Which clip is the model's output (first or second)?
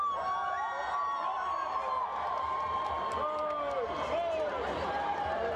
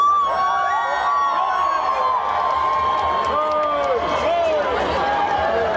first